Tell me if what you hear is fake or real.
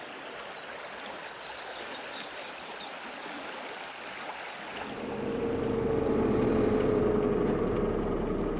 real